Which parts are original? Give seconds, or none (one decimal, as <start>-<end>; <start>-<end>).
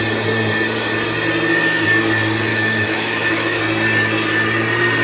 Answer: 0.0-2.5; 3.6-5.0